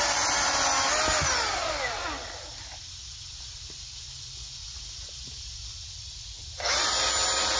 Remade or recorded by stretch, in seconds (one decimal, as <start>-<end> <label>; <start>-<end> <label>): 0.0-7.6 recorded